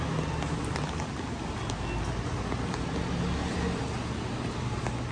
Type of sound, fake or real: real